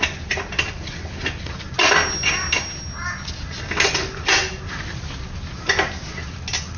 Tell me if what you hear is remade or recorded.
recorded